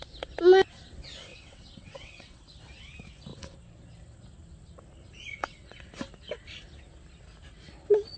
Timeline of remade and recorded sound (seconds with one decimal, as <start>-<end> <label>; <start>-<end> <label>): 0.0-1.3 recorded; 1.3-2.4 remade; 2.4-5.3 recorded; 5.3-5.9 remade; 5.9-8.2 recorded